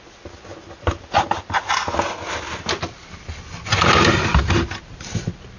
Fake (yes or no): no